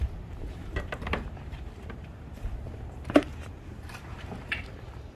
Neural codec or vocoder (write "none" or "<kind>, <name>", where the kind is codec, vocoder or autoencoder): vocoder, BigVGAN v2